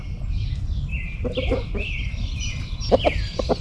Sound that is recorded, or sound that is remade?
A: recorded